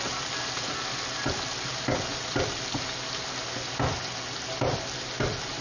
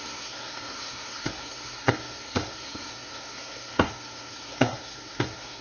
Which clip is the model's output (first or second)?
second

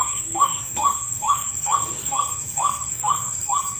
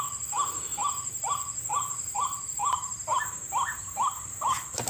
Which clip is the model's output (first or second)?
first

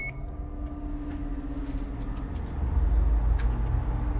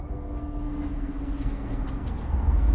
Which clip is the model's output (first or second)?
second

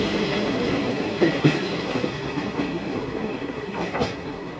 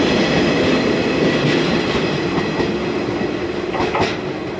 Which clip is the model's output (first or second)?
first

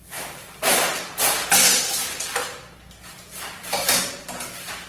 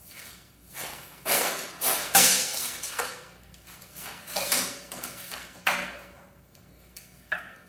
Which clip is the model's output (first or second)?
second